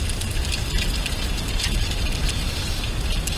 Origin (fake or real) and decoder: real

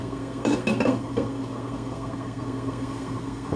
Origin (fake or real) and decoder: fake, codec, SNAC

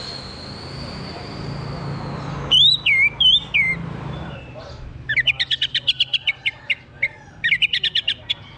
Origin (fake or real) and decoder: real